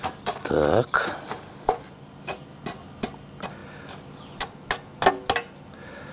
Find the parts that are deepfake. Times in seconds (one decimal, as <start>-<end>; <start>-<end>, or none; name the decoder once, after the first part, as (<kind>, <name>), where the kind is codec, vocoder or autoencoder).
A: none